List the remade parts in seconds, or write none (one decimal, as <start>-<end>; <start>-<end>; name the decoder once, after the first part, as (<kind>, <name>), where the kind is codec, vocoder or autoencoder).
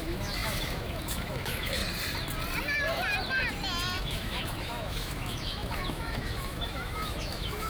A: 0.0-1.8 (autoencoder, DAC-VAE); 4.0-7.7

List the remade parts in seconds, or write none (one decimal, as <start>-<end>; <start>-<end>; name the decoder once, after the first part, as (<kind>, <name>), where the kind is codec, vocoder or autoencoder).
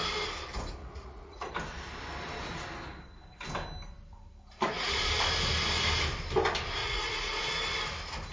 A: 0.8-1.5 (vocoder, Vocos); 6.8-7.4